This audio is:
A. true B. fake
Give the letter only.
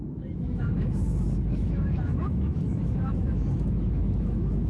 B